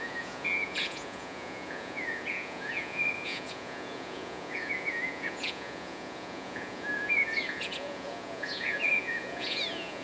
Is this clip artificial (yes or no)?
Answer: yes